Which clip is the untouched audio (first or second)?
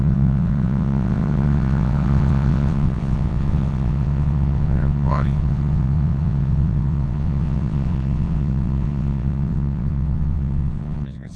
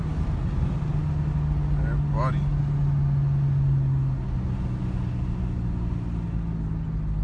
second